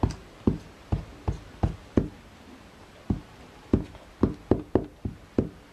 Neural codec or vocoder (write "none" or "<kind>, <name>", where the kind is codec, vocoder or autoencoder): none